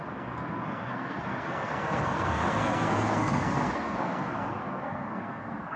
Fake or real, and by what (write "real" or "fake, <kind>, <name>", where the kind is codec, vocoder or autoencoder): fake, codec, SNAC